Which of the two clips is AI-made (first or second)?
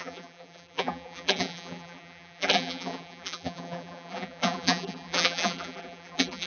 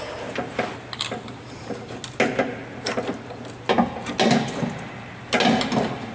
first